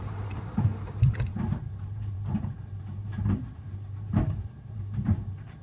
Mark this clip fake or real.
fake